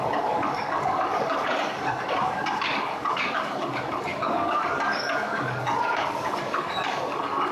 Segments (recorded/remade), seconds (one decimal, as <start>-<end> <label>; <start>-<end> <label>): 0.0-7.5 remade